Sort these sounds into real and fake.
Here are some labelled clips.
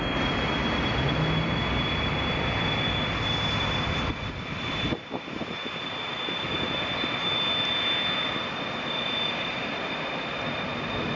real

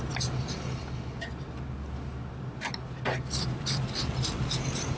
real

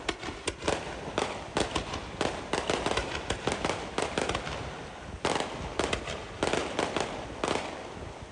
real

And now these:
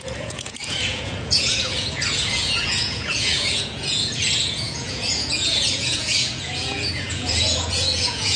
fake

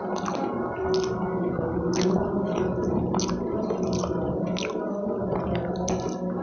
real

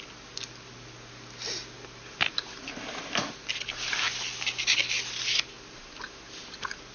real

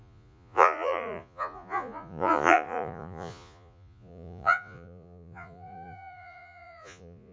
fake